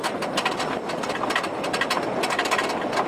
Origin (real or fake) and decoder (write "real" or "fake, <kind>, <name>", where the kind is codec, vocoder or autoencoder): real